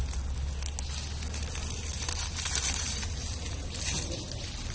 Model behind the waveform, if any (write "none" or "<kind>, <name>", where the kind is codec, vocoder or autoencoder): none